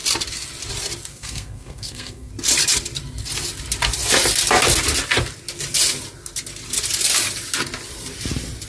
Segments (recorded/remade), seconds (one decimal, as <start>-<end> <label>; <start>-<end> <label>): 0.0-1.1 recorded; 1.1-2.3 remade; 2.3-8.7 recorded